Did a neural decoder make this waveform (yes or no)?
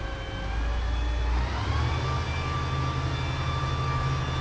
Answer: no